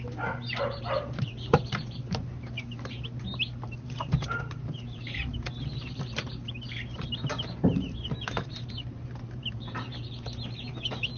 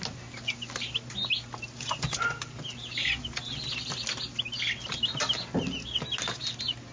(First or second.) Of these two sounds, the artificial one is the first